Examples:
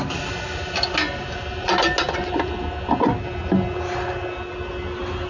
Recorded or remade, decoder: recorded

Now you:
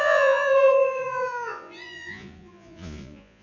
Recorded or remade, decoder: remade, vocoder, Vocos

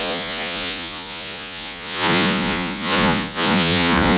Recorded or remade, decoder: remade, vocoder, Vocos